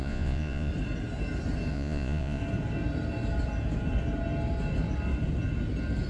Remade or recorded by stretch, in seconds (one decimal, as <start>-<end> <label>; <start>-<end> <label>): 0.0-0.7 remade; 0.7-1.7 recorded; 1.7-2.4 remade; 2.4-6.1 recorded